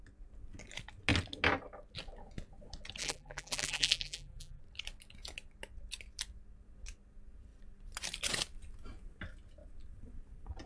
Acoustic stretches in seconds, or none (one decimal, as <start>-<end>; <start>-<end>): 0.0-3.0; 4.6-10.7